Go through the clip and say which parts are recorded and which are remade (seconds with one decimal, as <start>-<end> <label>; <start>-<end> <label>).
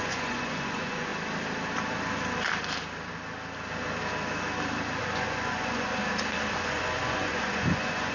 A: 0.0-1.1 remade; 1.1-5.0 recorded; 5.0-6.0 remade; 6.0-6.5 recorded; 6.5-8.1 remade